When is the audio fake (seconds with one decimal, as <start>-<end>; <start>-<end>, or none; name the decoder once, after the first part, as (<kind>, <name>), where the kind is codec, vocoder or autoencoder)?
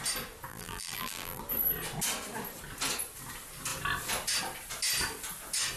0.5-1.4 (vocoder, BigVGAN v2)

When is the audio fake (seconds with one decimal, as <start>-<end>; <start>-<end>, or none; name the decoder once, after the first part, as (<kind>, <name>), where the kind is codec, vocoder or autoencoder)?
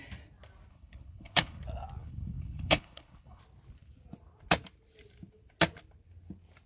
0.7-1.6 (codec, HILCodec); 2.0-3.4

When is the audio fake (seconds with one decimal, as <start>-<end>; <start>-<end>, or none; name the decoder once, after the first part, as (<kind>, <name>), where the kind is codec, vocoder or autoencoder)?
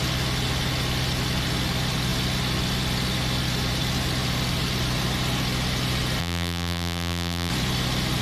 6.2-7.5 (vocoder, BigVGAN v2)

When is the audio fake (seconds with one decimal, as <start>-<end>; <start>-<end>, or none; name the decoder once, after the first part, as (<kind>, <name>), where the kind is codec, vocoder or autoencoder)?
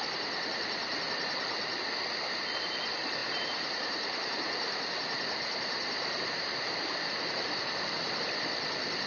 3.2-8.2 (vocoder, BigVGAN v2)